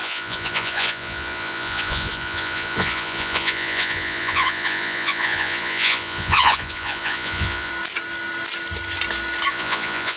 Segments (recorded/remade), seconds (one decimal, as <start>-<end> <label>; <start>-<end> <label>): 0.0-7.7 remade; 7.7-9.5 recorded; 9.5-10.2 remade